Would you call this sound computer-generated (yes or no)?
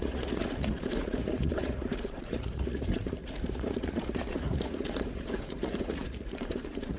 yes